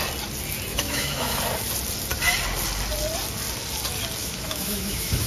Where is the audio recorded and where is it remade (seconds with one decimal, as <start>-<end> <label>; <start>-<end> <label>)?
0.0-0.7 recorded; 0.7-1.4 remade; 1.4-4.2 recorded; 4.2-5.3 remade